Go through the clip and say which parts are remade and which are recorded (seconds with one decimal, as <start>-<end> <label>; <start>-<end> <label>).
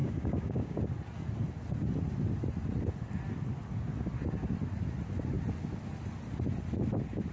0.0-0.8 remade; 0.8-7.3 recorded